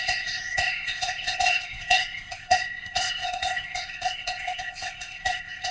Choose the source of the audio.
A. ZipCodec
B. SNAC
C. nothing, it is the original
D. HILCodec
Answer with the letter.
A